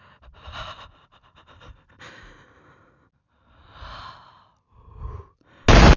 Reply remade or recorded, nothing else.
recorded